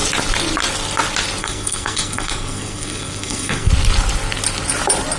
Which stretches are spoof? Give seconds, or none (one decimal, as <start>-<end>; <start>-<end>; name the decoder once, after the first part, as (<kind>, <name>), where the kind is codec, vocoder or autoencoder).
1.4-3.7 (codec, SNAC)